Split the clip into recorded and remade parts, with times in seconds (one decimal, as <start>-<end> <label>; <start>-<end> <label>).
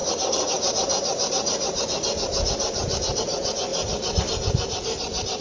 0.0-5.4 recorded